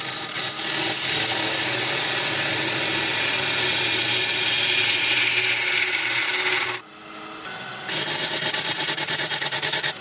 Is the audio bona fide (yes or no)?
yes